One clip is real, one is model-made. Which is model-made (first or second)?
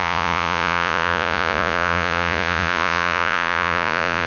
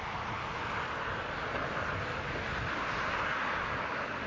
first